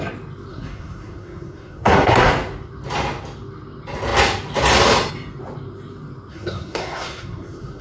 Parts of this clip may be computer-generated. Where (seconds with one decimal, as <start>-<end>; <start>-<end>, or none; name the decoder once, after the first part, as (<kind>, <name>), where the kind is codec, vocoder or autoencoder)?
0.5-2.3 (codec, SNAC); 6.3-7.8